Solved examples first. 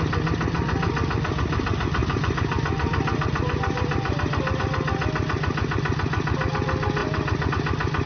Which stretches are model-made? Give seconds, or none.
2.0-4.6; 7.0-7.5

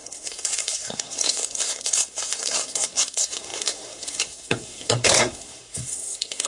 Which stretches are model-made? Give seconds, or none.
0.0-6.5

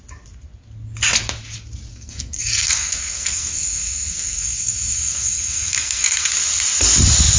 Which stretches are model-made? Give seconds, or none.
1.9-6.3

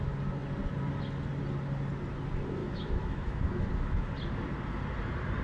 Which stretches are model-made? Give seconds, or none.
2.6-4.1

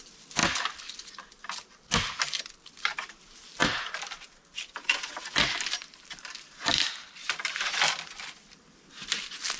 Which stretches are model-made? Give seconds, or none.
none

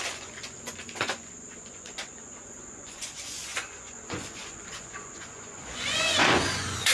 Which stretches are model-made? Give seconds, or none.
0.0-6.9